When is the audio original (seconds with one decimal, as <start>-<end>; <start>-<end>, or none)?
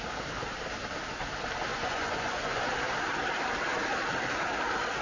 0.0-1.7; 2.6-5.0